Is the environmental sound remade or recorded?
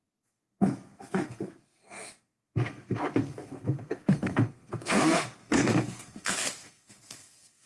remade